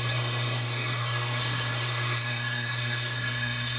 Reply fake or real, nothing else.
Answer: fake